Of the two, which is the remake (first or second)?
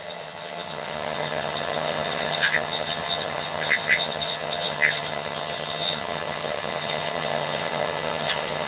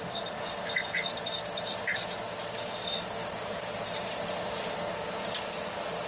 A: first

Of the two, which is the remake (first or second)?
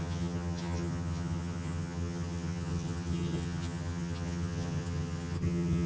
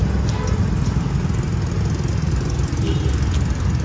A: first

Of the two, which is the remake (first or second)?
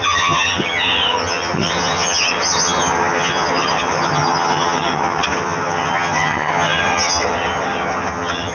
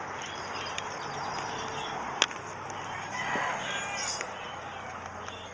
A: first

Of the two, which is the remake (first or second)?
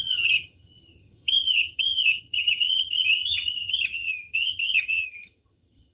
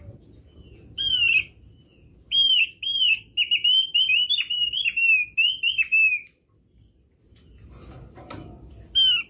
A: first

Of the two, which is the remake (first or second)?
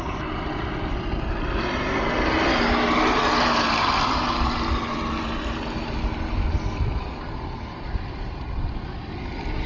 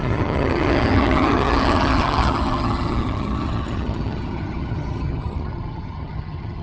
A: second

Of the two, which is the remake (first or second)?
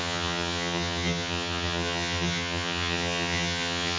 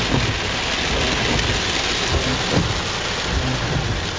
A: first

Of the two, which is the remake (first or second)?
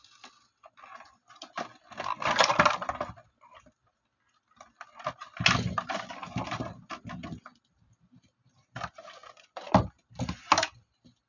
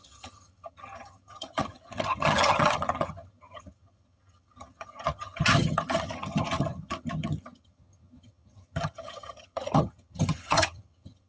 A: second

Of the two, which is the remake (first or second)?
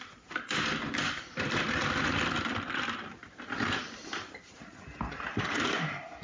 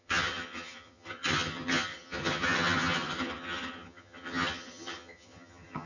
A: second